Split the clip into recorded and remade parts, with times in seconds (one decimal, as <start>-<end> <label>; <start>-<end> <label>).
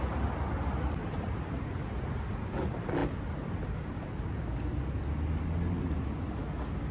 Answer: 0.0-6.9 recorded